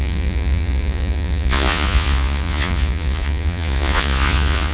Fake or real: fake